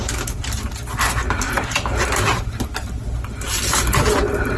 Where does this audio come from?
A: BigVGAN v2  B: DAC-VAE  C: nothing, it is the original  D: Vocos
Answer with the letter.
C